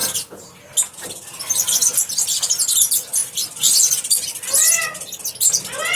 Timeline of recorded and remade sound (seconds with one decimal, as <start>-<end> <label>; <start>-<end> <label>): 0.0-6.0 recorded